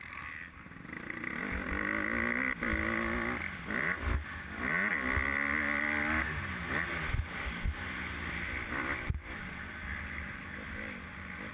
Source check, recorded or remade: recorded